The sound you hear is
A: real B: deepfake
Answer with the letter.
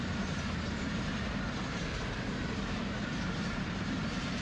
B